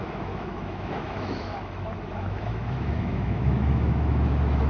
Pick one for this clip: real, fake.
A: fake